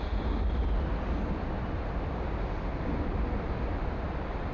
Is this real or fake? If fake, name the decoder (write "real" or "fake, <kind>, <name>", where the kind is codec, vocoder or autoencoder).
real